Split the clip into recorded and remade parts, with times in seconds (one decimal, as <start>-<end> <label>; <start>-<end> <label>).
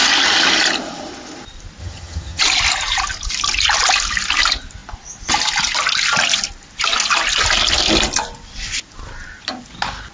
0.0-1.8 recorded; 1.8-2.4 remade; 2.4-10.1 recorded